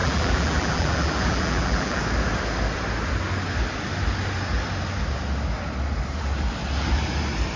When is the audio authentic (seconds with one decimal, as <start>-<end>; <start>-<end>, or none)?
2.0-7.6